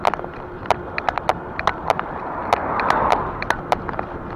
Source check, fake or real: real